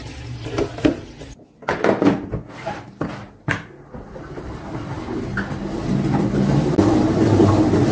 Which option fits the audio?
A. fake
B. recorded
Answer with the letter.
B